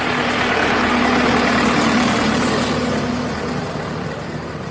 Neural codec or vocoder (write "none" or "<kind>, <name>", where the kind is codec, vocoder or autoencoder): none